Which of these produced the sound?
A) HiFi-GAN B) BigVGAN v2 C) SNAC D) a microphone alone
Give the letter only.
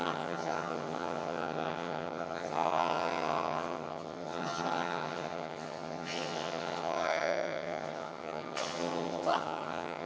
A